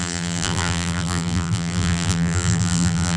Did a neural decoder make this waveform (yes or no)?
yes